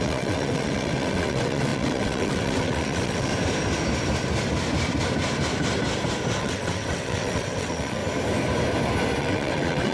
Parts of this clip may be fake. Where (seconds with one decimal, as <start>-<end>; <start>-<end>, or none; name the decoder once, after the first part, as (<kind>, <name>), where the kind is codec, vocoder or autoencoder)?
0.0-3.3 (vocoder, WaveNeXt); 6.4-8.0; 9.2-9.9